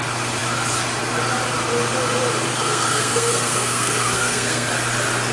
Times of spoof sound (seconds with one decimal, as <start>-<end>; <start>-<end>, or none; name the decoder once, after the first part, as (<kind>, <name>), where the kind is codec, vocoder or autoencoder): 2.5-4.7 (codec, SNAC)

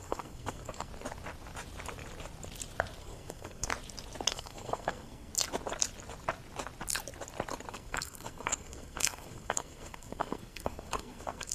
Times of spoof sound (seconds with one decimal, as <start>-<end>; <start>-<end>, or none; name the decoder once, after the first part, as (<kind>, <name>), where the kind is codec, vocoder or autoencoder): 0.0-0.9 (codec, SNAC); 3.0-3.7; 4.3-5.3; 7.7-11.5